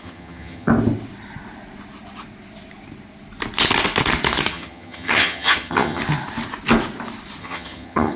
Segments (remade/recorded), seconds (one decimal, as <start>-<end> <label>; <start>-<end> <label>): 0.0-0.7 remade; 0.7-4.5 recorded; 4.5-6.0 remade; 6.0-7.4 recorded; 7.4-8.2 remade